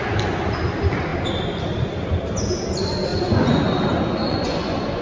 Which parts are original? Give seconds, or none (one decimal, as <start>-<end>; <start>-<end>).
0.0-3.1; 3.6-4.2

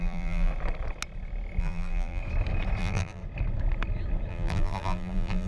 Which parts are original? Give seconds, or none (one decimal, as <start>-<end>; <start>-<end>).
0.5-1.6; 2.2-2.8; 3.2-4.3